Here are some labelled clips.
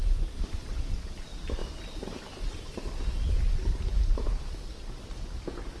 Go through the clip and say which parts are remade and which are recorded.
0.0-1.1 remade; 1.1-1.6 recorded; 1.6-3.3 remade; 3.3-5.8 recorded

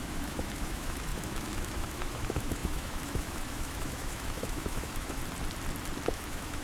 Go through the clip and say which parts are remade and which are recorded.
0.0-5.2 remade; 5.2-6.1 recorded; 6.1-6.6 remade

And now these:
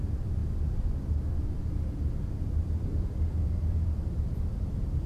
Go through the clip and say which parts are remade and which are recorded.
0.0-5.1 recorded

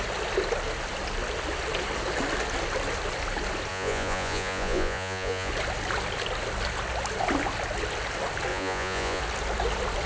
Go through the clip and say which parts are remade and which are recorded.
0.0-3.7 recorded; 3.7-5.5 remade; 5.5-8.5 recorded; 8.5-9.2 remade; 9.2-10.1 recorded